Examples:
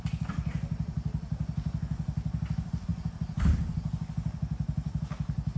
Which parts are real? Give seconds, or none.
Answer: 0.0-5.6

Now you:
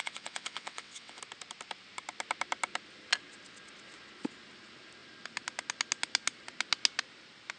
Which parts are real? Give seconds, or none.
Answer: 1.2-7.6

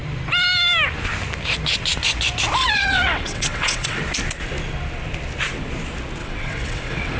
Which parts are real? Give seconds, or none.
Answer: 0.0-2.6; 4.0-6.2

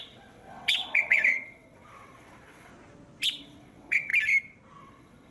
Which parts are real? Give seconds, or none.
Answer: 2.7-3.4; 4.1-4.8

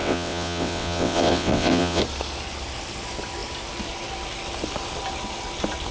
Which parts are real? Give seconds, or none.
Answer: 2.0-5.9

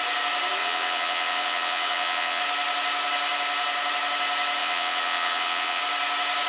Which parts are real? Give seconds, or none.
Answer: 0.0-0.6; 2.4-4.6; 5.8-6.5

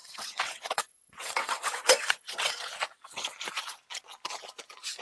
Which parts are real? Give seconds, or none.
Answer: 2.7-5.0

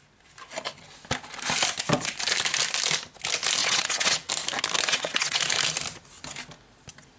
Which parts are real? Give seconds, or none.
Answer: 0.0-3.6; 4.3-4.9; 5.4-7.2